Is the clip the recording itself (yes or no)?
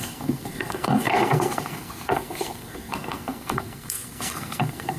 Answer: no